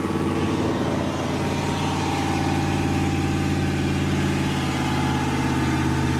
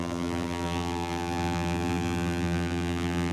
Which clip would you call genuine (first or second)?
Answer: first